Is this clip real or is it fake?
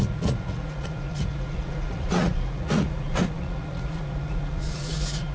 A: fake